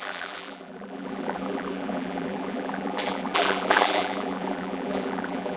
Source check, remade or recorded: remade